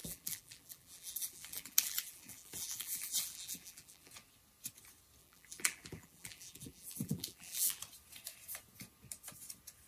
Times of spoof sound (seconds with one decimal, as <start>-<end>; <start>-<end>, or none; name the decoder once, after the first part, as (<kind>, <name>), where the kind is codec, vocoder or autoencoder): 0.0-4.1 (vocoder, BigVGAN v2); 5.2-7.8